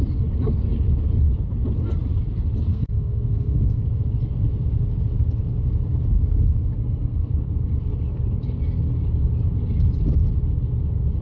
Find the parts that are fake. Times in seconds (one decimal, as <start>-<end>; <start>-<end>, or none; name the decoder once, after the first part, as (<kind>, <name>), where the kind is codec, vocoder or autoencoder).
2.7-3.8 (codec, SNAC); 6.8-7.3